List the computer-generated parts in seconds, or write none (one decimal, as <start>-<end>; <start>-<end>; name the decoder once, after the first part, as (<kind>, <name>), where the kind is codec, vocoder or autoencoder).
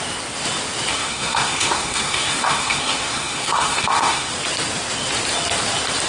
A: 0.9-4.3 (codec, SNAC)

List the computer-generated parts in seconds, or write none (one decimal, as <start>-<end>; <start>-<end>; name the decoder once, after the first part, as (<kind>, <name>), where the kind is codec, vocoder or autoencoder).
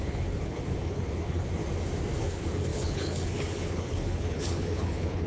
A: 0.0-1.6 (codec, HILCodec); 2.2-5.3